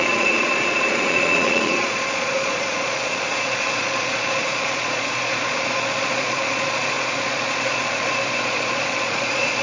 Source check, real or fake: fake